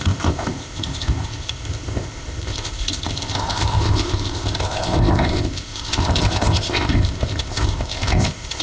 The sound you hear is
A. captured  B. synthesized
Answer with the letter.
B